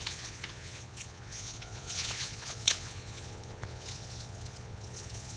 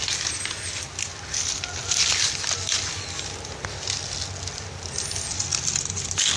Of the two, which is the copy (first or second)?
first